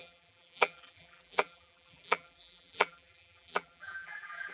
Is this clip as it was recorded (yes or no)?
no